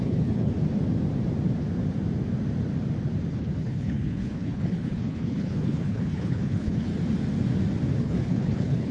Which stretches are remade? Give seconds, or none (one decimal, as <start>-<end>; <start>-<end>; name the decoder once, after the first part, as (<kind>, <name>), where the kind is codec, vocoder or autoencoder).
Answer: 0.0-0.5 (codec, HILCodec); 3.3-6.9; 8.0-8.9